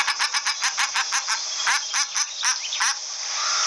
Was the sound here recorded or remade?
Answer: recorded